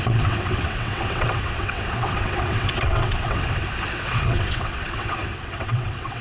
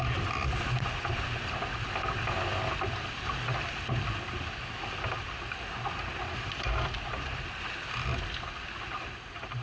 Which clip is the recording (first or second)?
second